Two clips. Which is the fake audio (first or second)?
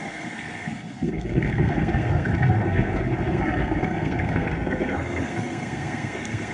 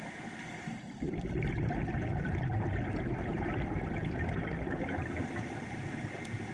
first